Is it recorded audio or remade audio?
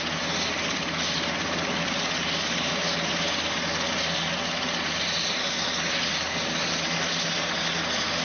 recorded